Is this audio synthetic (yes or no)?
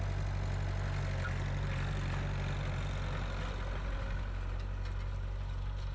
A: no